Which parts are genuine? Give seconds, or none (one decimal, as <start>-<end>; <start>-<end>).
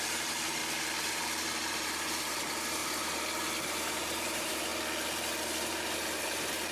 0.6-1.1; 2.8-3.6; 4.7-5.6